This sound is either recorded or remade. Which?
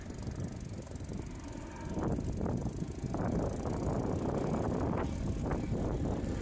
recorded